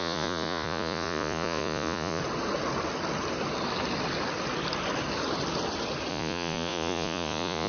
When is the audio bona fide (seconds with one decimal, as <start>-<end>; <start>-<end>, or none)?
2.2-6.1